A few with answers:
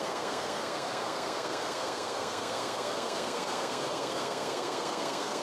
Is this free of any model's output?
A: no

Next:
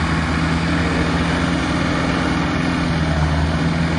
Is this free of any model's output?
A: yes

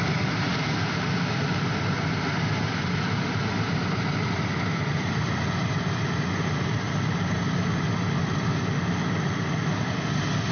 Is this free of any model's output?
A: yes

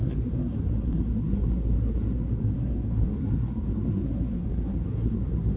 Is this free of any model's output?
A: no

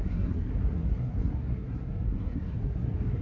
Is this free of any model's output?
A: no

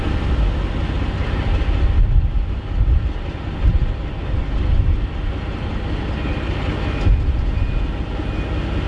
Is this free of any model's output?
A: yes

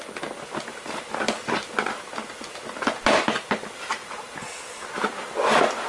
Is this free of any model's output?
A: yes